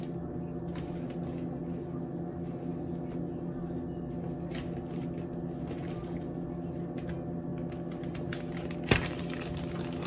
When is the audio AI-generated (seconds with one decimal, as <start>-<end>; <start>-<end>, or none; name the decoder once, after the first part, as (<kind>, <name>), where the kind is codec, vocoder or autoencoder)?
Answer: none